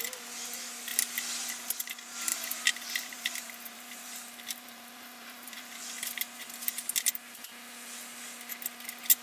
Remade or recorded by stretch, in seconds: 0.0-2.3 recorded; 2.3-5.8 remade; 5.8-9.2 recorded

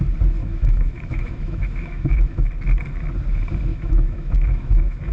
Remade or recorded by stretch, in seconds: 0.0-0.4 recorded; 0.4-2.4 remade; 2.4-3.7 recorded; 3.7-5.1 remade

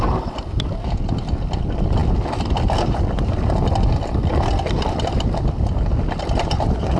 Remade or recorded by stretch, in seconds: 0.0-7.0 recorded